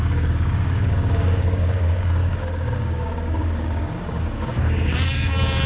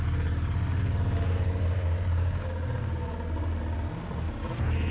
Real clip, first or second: second